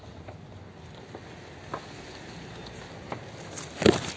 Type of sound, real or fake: real